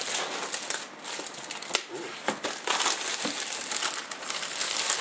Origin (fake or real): real